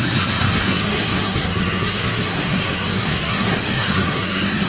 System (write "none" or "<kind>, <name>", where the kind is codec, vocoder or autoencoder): codec, SNAC